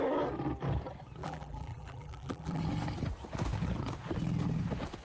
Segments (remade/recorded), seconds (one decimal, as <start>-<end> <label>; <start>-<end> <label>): 0.0-1.2 recorded; 1.2-2.6 remade; 2.6-5.0 recorded